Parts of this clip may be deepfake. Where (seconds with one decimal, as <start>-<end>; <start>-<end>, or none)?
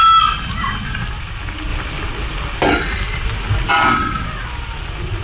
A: none